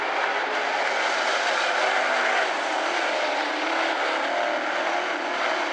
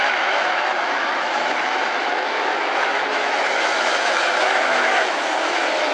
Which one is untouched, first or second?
first